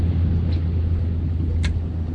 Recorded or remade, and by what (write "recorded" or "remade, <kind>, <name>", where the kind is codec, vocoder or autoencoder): recorded